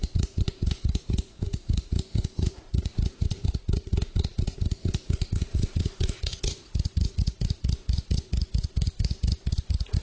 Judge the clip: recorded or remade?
remade